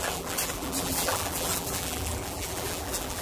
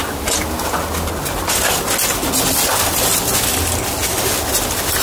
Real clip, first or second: second